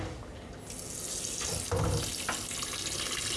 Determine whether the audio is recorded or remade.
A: recorded